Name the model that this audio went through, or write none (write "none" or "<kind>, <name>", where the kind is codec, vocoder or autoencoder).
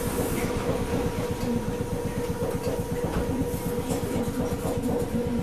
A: none